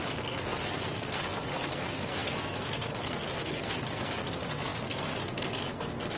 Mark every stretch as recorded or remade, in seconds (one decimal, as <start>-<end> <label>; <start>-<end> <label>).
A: 0.0-6.2 remade